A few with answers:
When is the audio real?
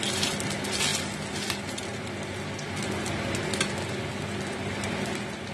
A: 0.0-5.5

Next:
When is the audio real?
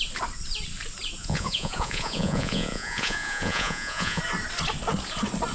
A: 0.0-1.2; 4.2-5.5